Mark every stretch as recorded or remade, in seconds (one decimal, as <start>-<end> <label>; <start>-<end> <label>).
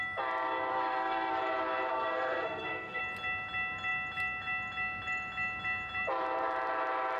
0.0-0.7 recorded; 0.7-1.3 remade; 1.3-1.9 recorded; 1.9-3.0 remade; 3.0-7.2 recorded